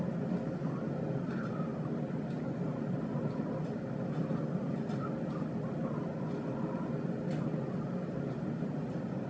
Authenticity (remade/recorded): recorded